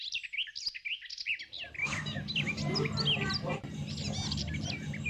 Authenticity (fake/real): real